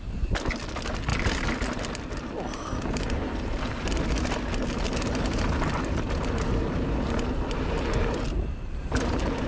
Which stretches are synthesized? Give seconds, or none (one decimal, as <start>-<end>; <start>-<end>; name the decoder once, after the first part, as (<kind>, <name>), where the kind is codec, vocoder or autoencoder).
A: none